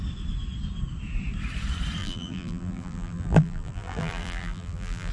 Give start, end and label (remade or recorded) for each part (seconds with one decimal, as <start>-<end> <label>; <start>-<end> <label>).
0.0-2.0 recorded; 2.0-5.1 remade